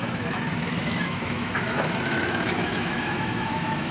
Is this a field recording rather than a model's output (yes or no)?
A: no